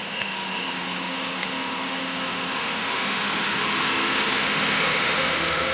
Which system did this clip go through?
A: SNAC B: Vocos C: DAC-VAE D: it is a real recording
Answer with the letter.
C